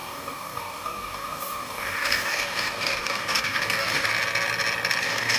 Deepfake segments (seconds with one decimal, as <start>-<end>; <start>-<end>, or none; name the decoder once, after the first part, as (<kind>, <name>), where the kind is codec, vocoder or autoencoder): 0.0-4.1 (codec, DAC); 5.0-5.4